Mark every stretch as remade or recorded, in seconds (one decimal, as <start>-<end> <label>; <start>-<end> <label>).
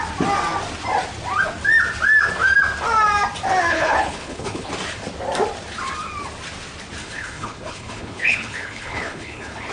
0.0-3.7 recorded; 3.7-4.7 remade; 4.7-7.0 recorded; 7.0-9.7 remade